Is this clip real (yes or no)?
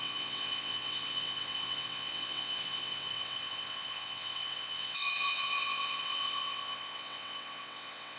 no